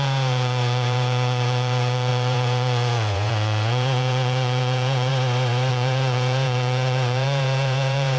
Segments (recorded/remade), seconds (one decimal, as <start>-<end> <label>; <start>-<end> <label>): 0.0-5.1 remade; 5.1-5.7 recorded; 5.7-8.2 remade